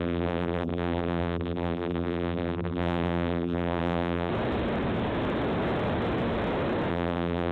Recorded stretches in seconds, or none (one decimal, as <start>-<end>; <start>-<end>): 4.3-6.9